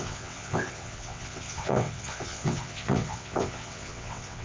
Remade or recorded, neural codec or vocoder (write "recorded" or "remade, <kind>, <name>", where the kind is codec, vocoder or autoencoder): remade, vocoder, WaveNeXt